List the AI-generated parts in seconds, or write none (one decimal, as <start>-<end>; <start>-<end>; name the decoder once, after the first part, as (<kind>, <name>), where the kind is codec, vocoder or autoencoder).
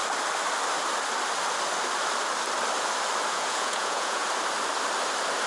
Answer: 3.3-4.2 (vocoder, Vocos)